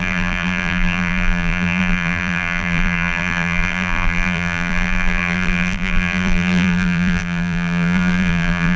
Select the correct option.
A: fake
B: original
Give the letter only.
A